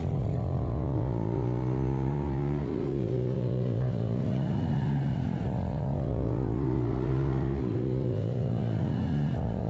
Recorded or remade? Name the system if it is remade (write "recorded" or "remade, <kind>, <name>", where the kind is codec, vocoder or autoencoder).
remade, vocoder, Vocos